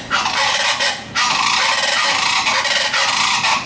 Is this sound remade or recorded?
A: recorded